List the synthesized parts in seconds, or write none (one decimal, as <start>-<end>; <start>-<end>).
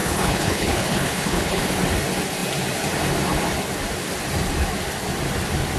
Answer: 0.0-1.6